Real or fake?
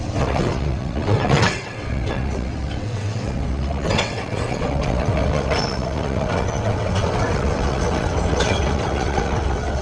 fake